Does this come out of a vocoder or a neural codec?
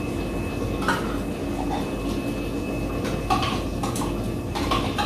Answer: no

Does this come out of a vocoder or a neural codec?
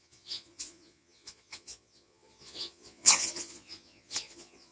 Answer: yes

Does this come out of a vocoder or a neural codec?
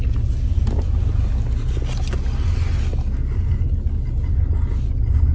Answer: no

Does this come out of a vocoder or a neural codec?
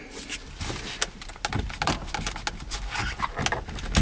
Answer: no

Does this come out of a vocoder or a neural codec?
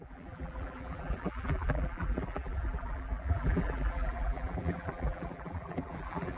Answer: yes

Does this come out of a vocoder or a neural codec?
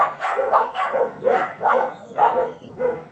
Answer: yes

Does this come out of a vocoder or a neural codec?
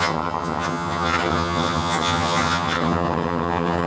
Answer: yes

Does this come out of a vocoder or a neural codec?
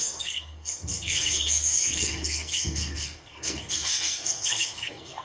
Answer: yes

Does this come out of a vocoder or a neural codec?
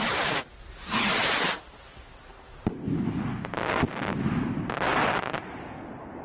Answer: no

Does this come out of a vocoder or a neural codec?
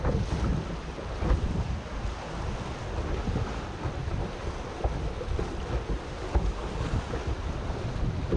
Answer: no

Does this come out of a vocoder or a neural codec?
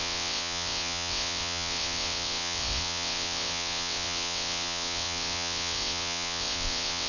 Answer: yes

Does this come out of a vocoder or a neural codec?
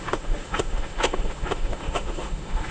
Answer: yes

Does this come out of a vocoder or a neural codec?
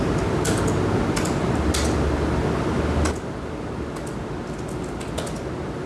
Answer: no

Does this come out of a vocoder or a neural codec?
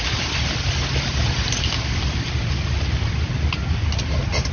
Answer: no